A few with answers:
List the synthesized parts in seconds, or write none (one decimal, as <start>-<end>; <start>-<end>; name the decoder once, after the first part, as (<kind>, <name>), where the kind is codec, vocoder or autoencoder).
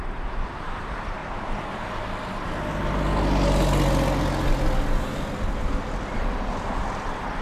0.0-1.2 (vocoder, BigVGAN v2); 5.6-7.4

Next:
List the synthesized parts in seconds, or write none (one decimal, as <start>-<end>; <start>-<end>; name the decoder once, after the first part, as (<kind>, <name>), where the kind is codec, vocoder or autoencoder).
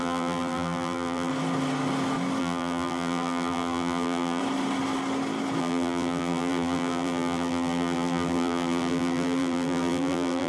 0.0-1.3 (vocoder, BigVGAN v2); 2.4-4.4; 5.6-10.5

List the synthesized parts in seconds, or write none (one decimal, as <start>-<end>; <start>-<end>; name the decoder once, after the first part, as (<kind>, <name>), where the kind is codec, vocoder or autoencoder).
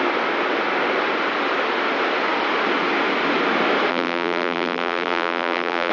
3.9-5.9 (vocoder, BigVGAN v2)